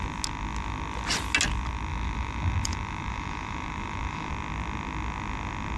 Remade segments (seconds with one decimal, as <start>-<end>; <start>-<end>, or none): 1.9-4.3